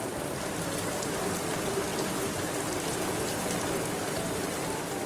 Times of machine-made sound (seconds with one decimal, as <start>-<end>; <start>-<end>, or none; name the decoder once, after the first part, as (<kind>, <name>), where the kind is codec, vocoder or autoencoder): 1.9-4.1 (vocoder, BigVGAN v2)